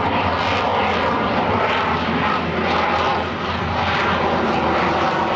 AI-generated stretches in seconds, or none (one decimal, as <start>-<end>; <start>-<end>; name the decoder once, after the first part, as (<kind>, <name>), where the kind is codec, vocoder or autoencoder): none